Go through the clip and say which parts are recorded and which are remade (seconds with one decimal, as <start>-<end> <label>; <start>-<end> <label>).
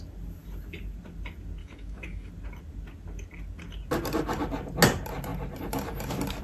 0.0-1.6 recorded; 1.6-2.3 remade; 2.3-6.4 recorded